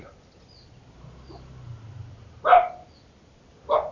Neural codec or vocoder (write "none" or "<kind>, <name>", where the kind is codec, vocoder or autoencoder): none